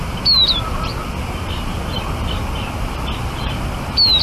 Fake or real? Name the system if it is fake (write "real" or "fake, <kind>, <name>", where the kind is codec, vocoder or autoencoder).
real